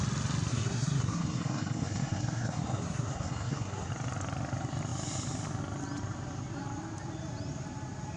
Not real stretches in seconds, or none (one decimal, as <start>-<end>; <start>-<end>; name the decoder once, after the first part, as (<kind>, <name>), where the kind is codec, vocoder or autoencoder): 0.5-3.9 (codec, SNAC)